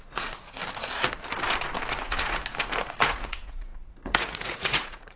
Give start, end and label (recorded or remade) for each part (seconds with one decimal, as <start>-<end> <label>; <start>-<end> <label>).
0.0-0.6 remade; 0.6-1.9 recorded; 1.9-2.4 remade; 2.4-3.1 recorded; 3.1-5.2 remade